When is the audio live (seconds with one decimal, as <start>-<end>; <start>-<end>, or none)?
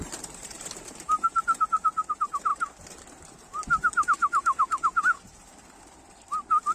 1.4-6.7